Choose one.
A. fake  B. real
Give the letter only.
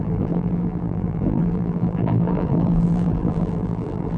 A